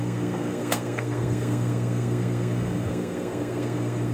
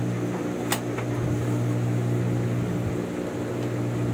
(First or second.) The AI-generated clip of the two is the first